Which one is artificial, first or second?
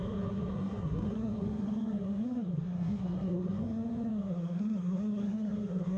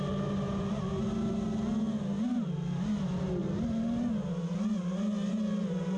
first